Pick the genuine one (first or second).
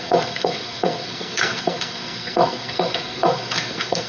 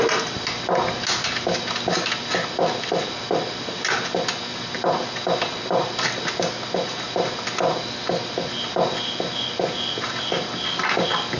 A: second